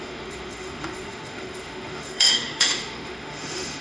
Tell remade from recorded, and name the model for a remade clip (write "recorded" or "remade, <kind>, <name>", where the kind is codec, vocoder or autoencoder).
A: remade, autoencoder, DAC-VAE